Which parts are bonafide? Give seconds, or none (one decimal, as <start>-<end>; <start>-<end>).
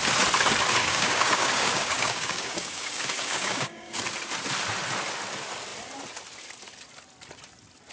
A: 0.0-0.8; 4.0-7.9